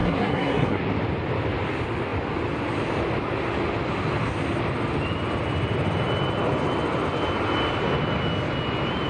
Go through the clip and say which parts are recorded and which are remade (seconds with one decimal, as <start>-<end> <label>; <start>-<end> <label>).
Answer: 0.0-0.8 remade; 0.8-9.1 recorded